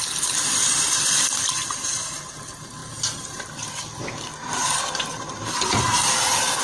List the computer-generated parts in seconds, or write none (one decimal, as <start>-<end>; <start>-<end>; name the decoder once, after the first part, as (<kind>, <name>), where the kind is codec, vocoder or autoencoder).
2.8-3.7 (vocoder, BigVGAN v2); 4.3-4.9

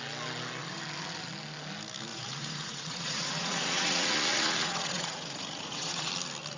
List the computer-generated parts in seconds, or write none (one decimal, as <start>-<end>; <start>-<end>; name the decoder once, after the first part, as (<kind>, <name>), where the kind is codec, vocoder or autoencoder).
2.1-6.1 (vocoder, Vocos)

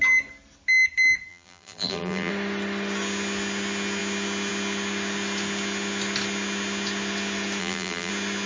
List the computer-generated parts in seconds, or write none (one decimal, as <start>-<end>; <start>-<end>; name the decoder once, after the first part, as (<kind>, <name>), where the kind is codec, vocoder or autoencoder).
1.3-2.3 (vocoder, BigVGAN v2); 7.6-8.1

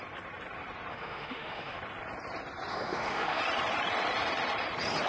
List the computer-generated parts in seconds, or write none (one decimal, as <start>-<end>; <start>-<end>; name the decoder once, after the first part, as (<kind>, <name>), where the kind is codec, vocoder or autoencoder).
0.9-1.8 (autoencoder, DAC-VAE); 2.7-3.4

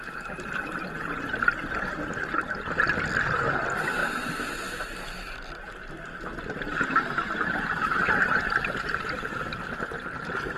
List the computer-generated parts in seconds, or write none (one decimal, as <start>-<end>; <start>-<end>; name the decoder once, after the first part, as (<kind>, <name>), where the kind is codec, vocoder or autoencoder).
none